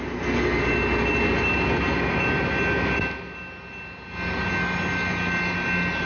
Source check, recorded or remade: recorded